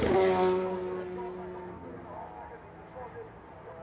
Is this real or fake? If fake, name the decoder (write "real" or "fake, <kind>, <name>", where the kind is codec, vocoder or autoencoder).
real